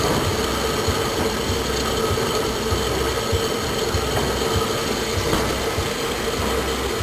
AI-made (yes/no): no